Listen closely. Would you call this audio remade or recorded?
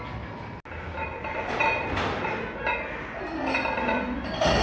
recorded